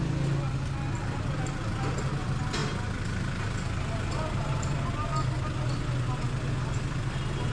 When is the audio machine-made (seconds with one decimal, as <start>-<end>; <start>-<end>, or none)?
none